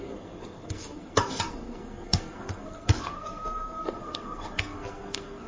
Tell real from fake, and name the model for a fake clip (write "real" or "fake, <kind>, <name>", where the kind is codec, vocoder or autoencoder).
fake, codec, SNAC